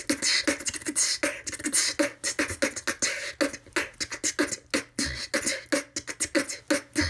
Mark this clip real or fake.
real